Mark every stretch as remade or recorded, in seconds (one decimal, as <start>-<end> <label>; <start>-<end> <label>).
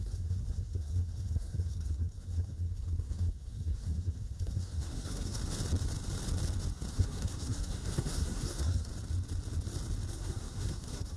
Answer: 0.0-5.4 remade; 5.4-6.9 recorded; 6.9-8.9 remade; 8.9-10.1 recorded; 10.1-11.2 remade